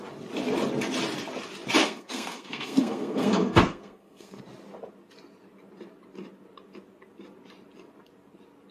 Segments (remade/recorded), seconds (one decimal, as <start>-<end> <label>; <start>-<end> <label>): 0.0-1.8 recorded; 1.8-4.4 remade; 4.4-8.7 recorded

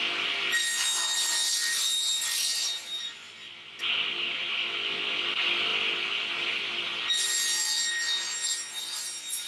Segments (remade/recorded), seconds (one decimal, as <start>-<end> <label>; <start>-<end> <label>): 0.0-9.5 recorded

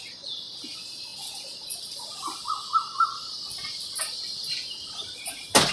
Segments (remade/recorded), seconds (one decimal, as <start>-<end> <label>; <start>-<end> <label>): 0.0-5.7 recorded